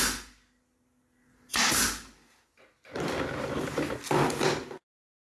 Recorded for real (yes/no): yes